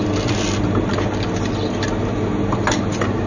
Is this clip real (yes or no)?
yes